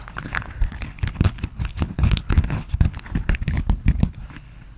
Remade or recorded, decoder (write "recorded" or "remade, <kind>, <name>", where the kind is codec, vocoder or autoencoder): remade, codec, HILCodec